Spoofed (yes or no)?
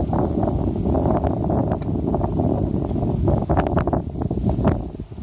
no